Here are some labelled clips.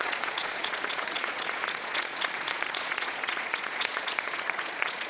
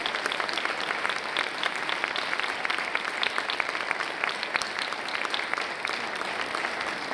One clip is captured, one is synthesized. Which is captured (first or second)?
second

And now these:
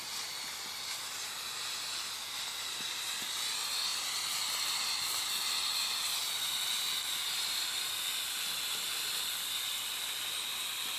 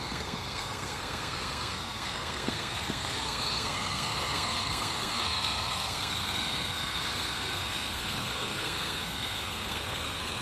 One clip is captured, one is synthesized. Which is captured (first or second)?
first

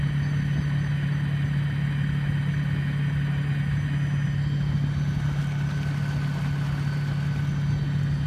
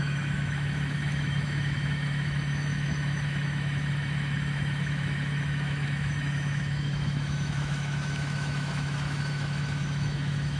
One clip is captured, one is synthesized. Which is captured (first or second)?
first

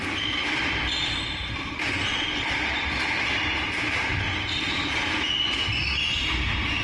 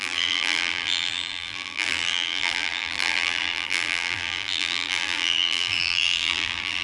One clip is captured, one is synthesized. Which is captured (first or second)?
first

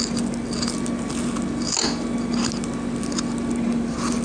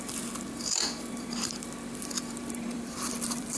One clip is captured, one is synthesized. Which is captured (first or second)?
first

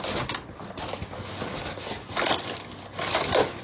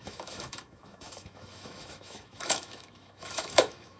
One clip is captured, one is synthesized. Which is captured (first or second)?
first